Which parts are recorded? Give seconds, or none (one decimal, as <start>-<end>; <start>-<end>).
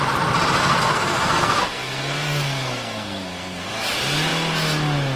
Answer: 0.0-0.6; 3.7-5.2